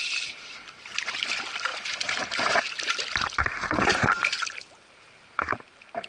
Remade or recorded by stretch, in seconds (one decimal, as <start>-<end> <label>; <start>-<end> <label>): 0.0-1.7 recorded; 1.7-2.7 remade; 2.7-3.6 recorded; 3.6-6.1 remade